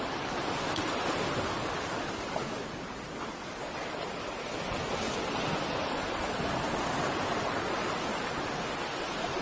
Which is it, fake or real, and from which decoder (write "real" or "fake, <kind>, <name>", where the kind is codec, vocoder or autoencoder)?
real